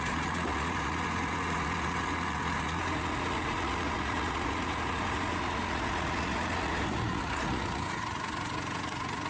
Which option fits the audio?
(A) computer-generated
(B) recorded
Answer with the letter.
A